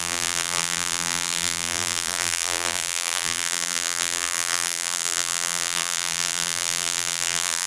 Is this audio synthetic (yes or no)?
yes